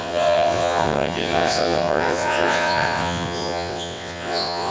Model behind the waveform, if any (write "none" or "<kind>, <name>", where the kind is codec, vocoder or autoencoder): vocoder, WaveNeXt